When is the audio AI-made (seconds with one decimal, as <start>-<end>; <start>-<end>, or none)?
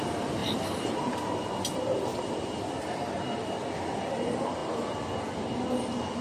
0.4-1.0; 2.1-3.2; 4.6-5.2